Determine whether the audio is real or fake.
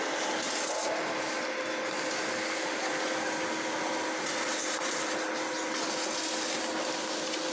real